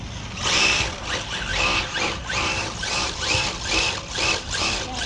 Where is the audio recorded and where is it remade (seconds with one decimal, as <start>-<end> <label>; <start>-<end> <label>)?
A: 0.0-1.5 recorded; 1.5-4.6 remade; 4.6-5.1 recorded